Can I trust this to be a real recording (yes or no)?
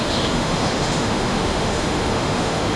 no